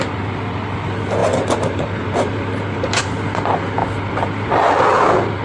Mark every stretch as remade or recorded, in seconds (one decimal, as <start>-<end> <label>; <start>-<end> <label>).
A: 0.0-1.2 recorded; 1.2-3.2 remade; 3.2-5.4 recorded

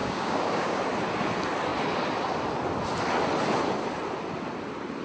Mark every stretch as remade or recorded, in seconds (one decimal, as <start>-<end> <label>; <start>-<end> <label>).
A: 0.0-0.8 remade; 0.8-5.0 recorded